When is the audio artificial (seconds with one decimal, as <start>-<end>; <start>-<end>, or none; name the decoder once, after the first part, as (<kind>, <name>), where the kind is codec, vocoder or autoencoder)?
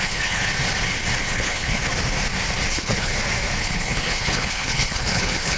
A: 0.0-0.4 (codec, HILCodec); 1.2-1.8; 2.7-3.1; 3.6-5.6